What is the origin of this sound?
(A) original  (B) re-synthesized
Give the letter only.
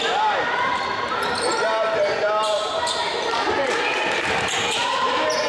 B